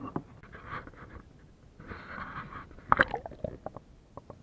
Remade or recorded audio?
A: recorded